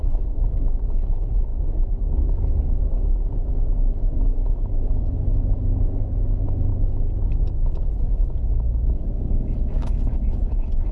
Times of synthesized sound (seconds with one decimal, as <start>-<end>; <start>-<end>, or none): 0.0-6.7; 8.0-10.9